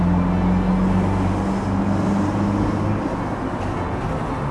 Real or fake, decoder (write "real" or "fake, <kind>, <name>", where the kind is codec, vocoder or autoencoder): real